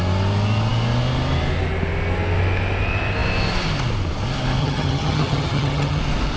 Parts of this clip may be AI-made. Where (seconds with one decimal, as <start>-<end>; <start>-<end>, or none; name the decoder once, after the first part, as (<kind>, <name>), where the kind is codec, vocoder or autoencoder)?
4.6-6.0 (vocoder, HiFi-GAN)